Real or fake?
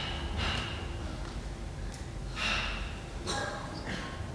real